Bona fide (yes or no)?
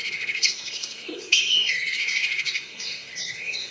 no